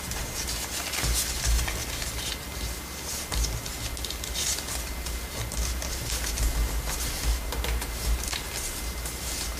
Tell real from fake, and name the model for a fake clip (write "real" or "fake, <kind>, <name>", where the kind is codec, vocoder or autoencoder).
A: real